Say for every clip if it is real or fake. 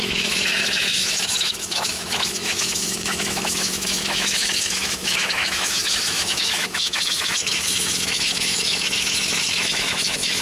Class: fake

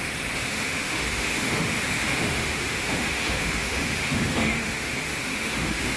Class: fake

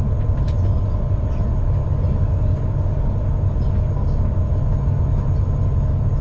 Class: real